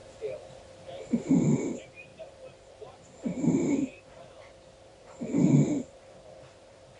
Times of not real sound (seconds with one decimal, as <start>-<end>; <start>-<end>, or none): 1.3-2.1; 3.7-7.0

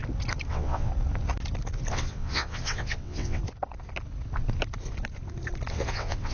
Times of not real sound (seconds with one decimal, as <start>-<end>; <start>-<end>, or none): 0.5-0.9; 1.9-3.4; 5.7-6.3

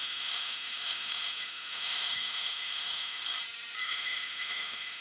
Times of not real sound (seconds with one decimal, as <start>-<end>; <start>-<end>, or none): 0.0-3.2; 3.8-5.0

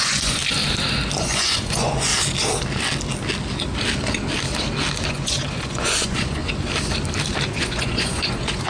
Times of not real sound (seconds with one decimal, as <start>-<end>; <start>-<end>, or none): 0.0-0.4; 1.2-2.1; 5.1-6.4; 7.5-8.7

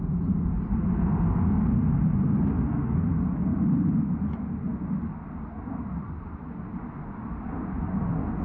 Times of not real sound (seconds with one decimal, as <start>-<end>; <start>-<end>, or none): none

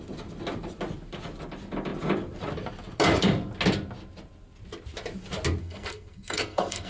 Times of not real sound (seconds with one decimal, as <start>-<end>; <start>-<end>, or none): 5.6-6.9

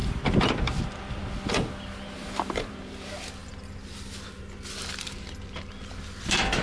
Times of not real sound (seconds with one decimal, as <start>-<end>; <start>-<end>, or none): 2.2-2.9

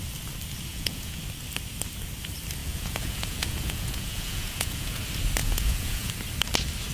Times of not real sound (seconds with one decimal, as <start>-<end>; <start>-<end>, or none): 0.7-1.2; 2.6-5.0; 5.4-6.1